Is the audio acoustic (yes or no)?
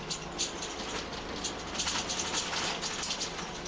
yes